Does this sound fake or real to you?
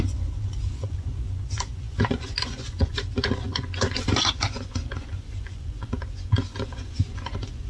fake